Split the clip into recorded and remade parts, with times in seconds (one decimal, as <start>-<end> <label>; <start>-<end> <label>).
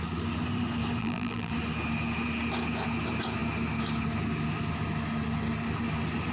0.0-1.0 recorded; 1.0-1.5 remade; 1.5-6.3 recorded